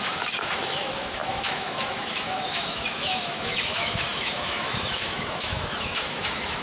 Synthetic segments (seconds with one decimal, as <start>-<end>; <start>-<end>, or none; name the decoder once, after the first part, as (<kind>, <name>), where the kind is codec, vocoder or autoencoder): 0.0-6.6 (autoencoder, DAC-VAE)